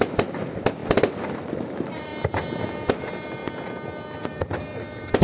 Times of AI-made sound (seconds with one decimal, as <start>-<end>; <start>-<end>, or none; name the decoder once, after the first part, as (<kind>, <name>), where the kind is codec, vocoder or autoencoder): 0.0-3.4 (vocoder, BigVGAN v2); 4.2-5.2